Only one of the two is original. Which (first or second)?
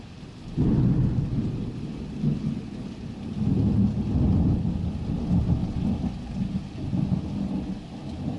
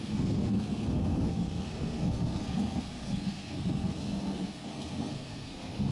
first